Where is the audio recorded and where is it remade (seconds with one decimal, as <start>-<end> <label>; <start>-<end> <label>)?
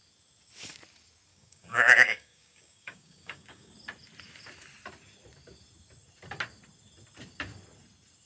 0.0-1.3 recorded; 1.3-3.7 remade; 3.7-8.3 recorded